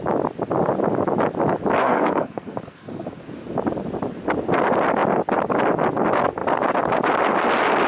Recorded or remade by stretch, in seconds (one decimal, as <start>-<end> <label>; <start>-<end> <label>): 0.0-1.8 recorded; 1.8-3.2 remade; 3.2-7.9 recorded